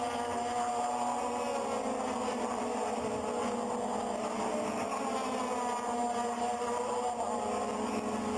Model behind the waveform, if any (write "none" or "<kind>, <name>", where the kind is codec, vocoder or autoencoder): none